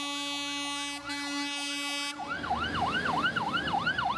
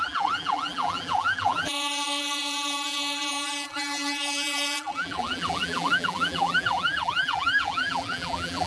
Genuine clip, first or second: first